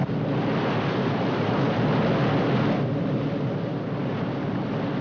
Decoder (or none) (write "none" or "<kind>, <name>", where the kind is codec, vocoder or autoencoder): none